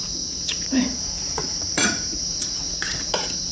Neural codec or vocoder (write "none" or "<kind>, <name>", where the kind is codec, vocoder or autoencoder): vocoder, Vocos